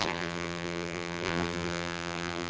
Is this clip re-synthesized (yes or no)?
yes